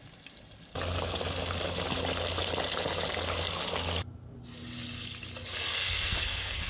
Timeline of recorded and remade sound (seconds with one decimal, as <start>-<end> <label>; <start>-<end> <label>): 0.0-5.7 recorded; 5.7-6.7 remade